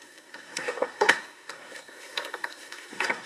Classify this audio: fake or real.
fake